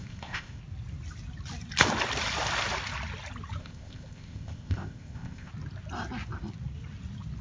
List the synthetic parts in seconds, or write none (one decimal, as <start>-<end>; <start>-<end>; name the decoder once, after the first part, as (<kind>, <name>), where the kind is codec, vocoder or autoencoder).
0.0-0.6 (codec, ZipCodec); 3.6-5.5